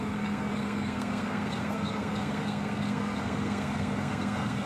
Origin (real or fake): fake